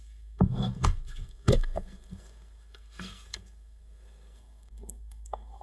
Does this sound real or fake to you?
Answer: fake